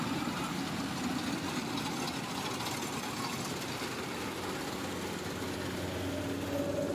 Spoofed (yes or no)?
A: no